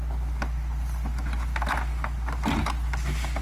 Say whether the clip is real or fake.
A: real